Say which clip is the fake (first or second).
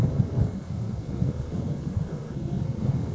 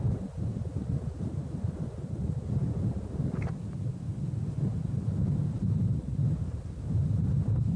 first